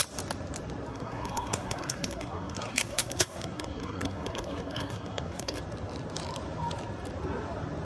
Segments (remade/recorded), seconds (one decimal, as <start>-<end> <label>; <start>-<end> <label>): 0.0-0.9 recorded; 0.9-5.6 remade; 5.6-7.8 recorded